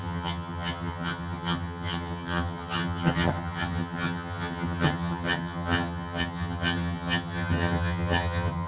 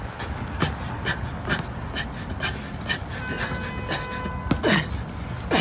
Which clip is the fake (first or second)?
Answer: first